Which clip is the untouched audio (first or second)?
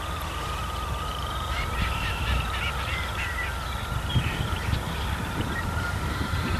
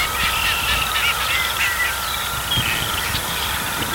second